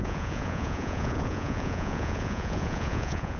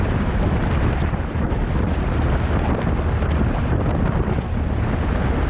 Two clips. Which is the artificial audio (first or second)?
first